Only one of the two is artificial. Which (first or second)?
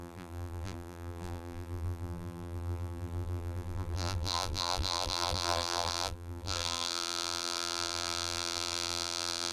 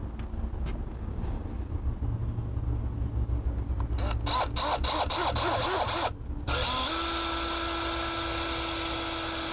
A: first